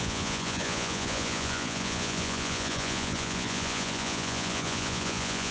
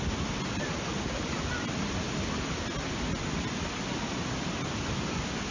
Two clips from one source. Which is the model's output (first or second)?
first